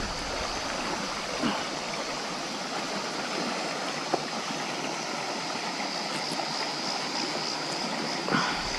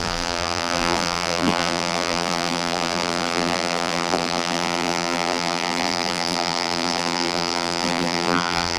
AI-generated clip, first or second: second